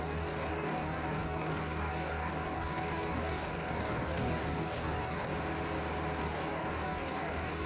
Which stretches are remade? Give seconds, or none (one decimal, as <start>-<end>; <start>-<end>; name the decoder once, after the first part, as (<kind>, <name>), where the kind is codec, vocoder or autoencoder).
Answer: 0.0-5.3 (codec, DAC); 6.2-7.7